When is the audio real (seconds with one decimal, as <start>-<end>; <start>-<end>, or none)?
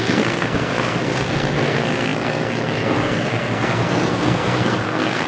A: none